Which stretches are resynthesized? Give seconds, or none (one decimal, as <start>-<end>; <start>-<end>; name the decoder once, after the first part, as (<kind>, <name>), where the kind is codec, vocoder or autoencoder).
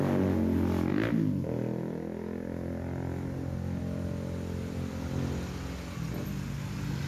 none